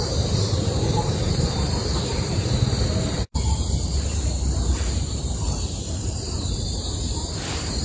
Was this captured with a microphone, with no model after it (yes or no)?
no